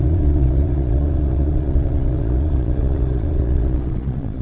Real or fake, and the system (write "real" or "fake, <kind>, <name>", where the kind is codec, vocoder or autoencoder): fake, vocoder, Vocos